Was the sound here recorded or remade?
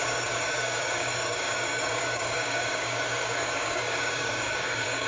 remade